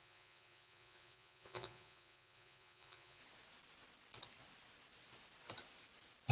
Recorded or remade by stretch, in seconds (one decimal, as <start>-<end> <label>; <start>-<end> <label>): 0.0-3.2 remade; 3.2-6.3 recorded